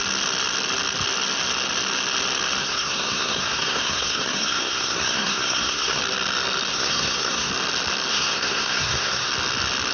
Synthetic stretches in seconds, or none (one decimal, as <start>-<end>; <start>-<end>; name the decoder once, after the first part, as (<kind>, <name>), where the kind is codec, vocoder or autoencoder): 2.6-6.0 (codec, SNAC); 6.7-7.5; 8.1-9.3